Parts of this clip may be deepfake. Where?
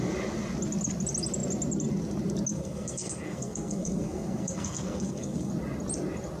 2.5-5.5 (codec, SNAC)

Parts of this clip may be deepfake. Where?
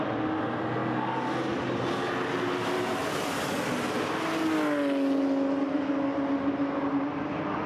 none